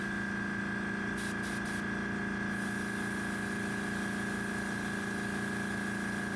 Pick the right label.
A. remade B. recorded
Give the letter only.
B